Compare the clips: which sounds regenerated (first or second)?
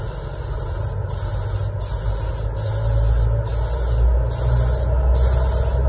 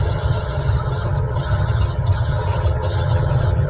second